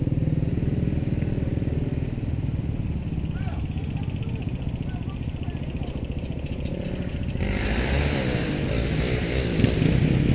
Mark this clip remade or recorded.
recorded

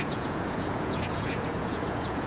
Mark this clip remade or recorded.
remade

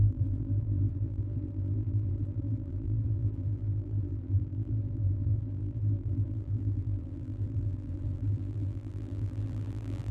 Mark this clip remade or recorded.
remade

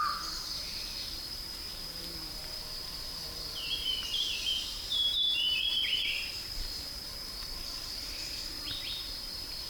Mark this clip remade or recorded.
remade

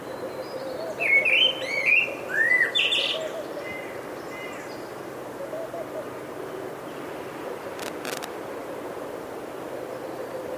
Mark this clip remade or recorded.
remade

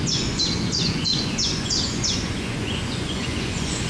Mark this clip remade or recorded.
remade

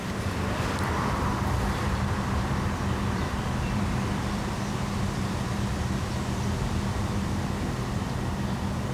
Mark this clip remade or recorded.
remade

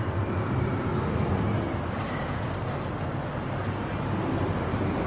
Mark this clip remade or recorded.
recorded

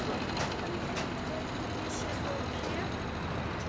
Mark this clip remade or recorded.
recorded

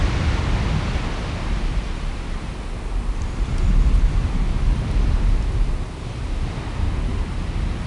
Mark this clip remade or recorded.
recorded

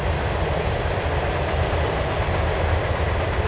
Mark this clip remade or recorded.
recorded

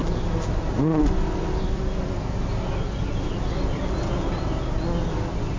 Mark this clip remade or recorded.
recorded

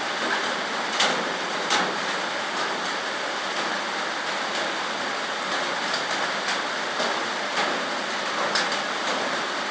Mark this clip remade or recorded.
recorded